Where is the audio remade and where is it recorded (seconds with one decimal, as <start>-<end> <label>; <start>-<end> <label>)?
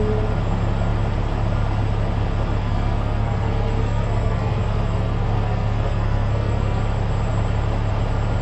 0.0-2.6 recorded; 2.6-6.8 remade; 6.8-8.4 recorded